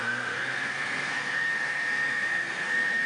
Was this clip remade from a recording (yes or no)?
yes